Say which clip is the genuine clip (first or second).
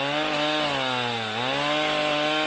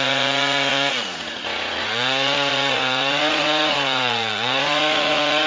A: first